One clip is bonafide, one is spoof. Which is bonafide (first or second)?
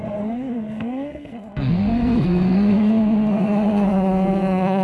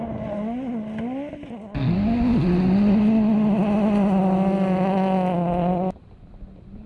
second